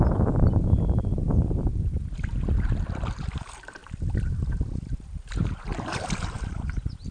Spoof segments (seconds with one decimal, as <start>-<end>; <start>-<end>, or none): 0.0-1.7; 3.1-3.8; 5.3-5.7; 6.5-7.1